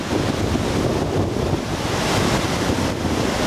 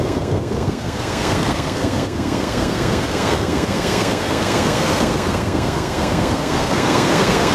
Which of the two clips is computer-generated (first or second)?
second